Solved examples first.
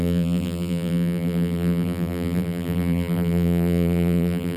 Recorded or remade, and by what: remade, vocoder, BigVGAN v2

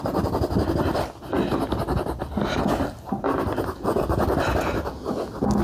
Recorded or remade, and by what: recorded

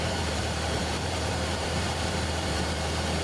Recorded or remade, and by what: remade, vocoder, BigVGAN v2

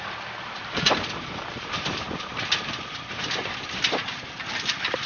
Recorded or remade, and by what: remade, vocoder, BigVGAN v2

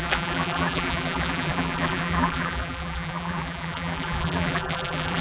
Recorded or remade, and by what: remade, vocoder, BigVGAN v2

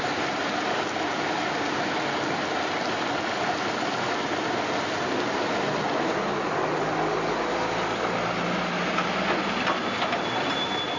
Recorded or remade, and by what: recorded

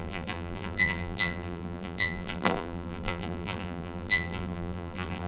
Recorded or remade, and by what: remade, vocoder, BigVGAN v2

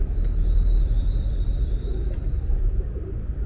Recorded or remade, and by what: remade, vocoder, BigVGAN v2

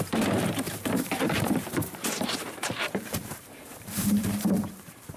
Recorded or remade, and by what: remade, vocoder, BigVGAN v2